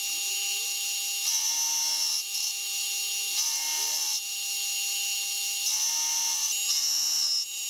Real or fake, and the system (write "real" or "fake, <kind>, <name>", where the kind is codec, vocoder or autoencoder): real